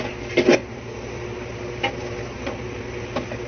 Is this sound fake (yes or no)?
no